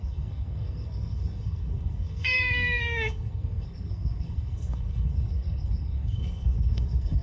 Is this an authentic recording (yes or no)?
no